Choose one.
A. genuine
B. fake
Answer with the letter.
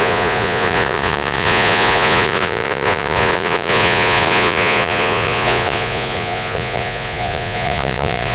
B